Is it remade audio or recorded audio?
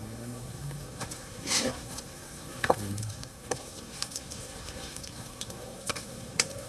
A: remade